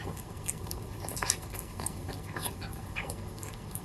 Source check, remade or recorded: remade